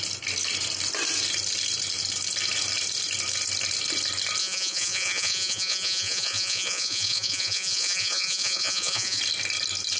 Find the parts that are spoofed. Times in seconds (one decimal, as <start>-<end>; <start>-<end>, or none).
4.4-9.2